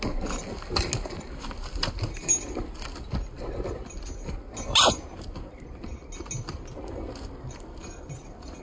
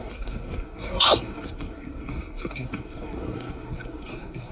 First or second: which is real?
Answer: first